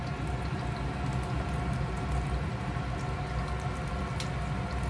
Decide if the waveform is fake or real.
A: real